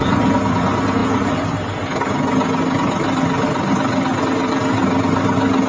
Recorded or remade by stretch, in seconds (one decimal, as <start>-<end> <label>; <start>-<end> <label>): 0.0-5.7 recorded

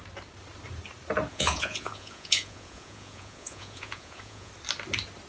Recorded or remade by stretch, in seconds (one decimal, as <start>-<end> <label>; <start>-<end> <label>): 0.0-1.3 recorded; 1.3-4.5 remade; 4.5-5.3 recorded

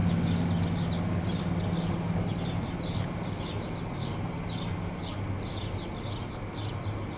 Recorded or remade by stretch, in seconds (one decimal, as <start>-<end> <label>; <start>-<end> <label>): 0.0-7.2 recorded

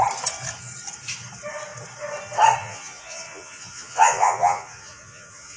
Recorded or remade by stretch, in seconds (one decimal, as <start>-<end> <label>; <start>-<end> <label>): 0.0-2.6 recorded; 2.6-5.6 remade

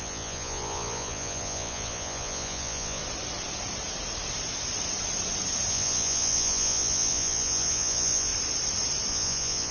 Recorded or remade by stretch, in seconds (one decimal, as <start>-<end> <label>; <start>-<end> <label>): 0.0-3.0 remade; 3.0-5.7 recorded; 5.7-8.3 remade; 8.3-9.1 recorded; 9.1-9.7 remade

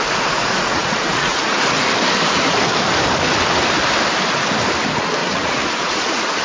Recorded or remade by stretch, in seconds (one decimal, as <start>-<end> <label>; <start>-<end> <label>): 0.0-0.4 recorded; 0.4-1.7 remade; 1.7-5.2 recorded; 5.2-6.4 remade

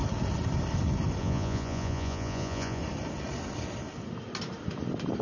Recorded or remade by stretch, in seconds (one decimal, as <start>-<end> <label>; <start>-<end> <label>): 0.0-1.2 recorded; 1.2-2.8 remade; 2.8-5.2 recorded

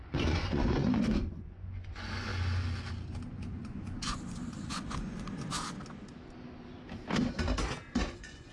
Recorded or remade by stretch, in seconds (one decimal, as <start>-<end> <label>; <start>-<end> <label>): 0.0-2.3 remade; 2.3-3.3 recorded; 3.3-5.5 remade; 5.5-7.9 recorded; 7.9-8.5 remade